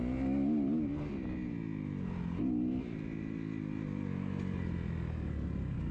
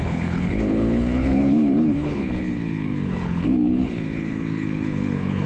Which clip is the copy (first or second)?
second